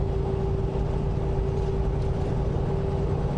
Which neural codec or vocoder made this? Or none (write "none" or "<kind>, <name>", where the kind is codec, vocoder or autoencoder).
none